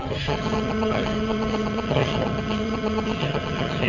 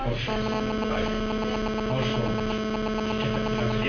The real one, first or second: second